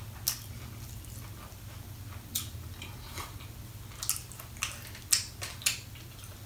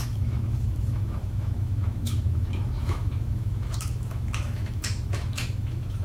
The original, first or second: first